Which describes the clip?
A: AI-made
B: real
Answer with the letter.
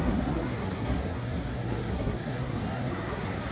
A